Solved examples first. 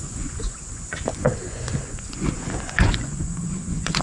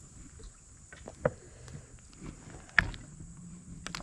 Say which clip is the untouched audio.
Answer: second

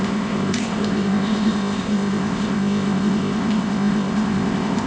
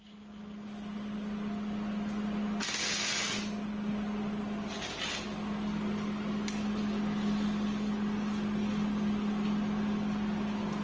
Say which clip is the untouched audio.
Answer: second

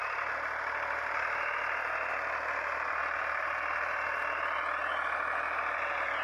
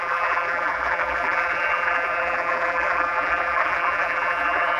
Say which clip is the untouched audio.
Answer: first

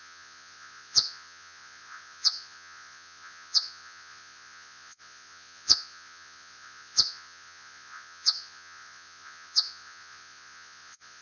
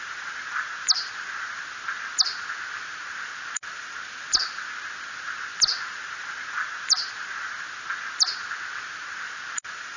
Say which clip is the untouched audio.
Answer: second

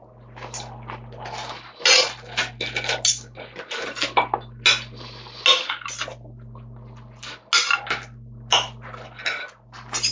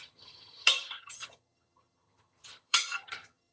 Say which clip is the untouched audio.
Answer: first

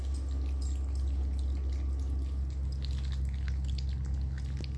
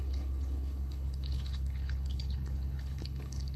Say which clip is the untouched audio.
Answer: first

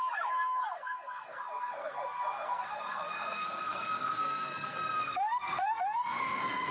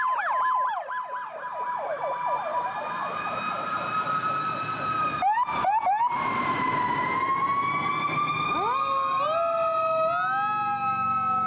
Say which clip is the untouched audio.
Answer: second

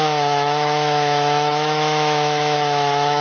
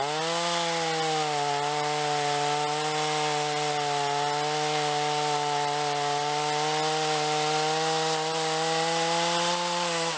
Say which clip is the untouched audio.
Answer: second